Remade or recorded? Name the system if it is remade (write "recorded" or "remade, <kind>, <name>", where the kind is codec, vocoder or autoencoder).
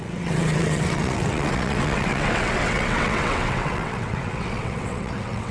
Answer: remade, vocoder, WaveNeXt